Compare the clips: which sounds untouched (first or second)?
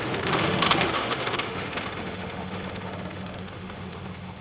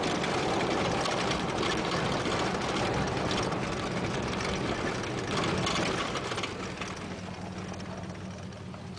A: second